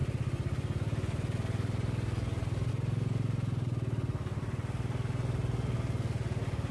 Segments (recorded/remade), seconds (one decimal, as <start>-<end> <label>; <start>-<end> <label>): 0.0-6.7 recorded